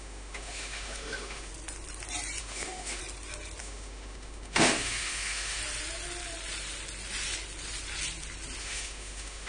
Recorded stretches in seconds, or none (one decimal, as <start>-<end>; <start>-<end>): 1.5-2.4; 3.0-3.6; 5.6-8.6

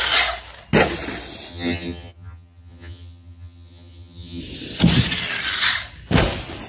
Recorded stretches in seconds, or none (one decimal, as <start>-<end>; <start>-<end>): 0.0-1.5; 4.4-6.7

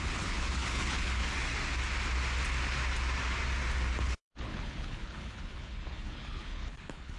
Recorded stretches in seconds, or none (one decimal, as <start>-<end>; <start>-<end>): 1.2-4.0

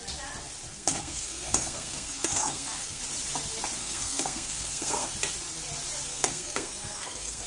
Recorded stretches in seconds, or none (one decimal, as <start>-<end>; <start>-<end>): 0.0-0.7; 3.0-3.8; 5.1-6.1

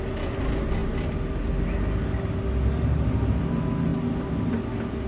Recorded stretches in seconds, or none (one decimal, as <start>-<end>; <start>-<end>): 0.0-5.1

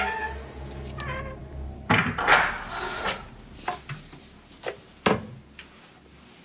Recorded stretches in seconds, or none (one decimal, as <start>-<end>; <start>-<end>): 0.0-6.4

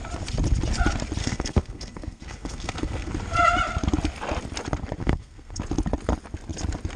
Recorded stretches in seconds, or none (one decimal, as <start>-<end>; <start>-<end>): 0.0-1.2; 3.1-5.0; 5.6-7.0

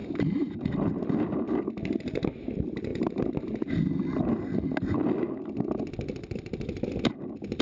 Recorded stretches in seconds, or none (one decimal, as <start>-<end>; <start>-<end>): 1.0-2.9; 4.0-7.6